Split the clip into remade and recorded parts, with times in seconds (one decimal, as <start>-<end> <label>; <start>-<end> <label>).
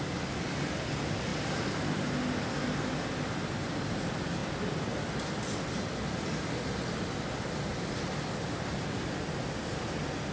0.0-10.3 recorded